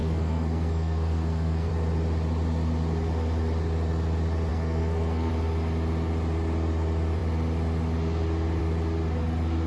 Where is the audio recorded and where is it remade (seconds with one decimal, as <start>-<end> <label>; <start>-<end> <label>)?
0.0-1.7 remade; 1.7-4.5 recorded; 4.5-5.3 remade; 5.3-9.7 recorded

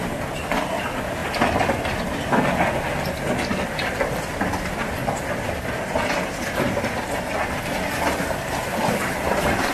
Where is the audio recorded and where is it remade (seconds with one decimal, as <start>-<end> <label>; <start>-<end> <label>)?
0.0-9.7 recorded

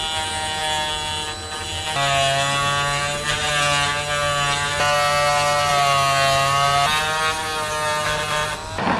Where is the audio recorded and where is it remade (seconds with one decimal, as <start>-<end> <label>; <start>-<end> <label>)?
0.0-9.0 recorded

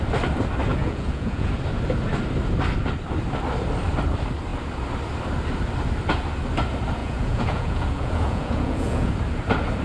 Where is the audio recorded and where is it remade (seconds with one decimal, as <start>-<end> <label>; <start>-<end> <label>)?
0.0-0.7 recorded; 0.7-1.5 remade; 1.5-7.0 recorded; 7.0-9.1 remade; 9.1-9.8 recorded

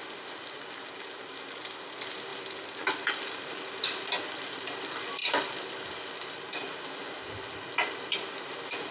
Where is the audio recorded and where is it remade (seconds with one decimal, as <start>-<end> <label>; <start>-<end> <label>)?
0.0-8.9 recorded

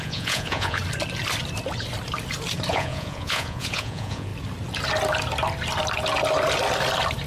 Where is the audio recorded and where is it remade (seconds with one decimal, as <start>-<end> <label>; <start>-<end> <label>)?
0.0-0.8 remade; 0.8-2.7 recorded; 2.7-4.3 remade; 4.3-7.3 recorded

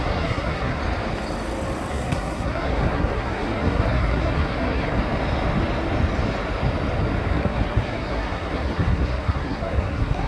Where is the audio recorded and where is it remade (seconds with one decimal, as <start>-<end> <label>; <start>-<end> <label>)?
0.0-0.8 remade; 0.8-1.9 recorded; 1.9-5.0 remade; 5.0-7.3 recorded; 7.3-10.3 remade